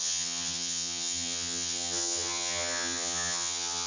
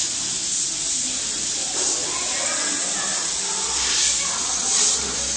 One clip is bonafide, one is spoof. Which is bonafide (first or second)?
second